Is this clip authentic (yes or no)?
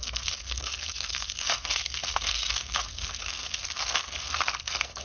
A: no